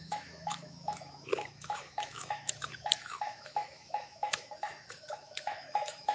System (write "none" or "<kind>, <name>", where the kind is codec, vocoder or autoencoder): autoencoder, DAC-VAE